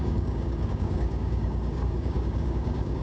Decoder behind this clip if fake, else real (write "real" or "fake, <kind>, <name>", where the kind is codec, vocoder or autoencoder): fake, codec, DAC